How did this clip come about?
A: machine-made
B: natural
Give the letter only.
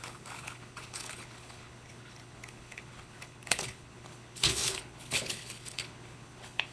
A